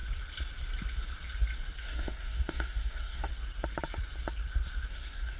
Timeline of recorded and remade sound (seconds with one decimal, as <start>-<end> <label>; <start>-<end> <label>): 0.0-1.8 recorded; 1.8-3.3 remade; 3.3-4.9 recorded; 4.9-5.4 remade